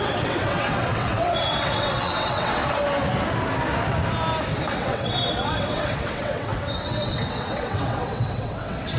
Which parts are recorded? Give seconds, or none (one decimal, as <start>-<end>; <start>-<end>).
2.6-4.8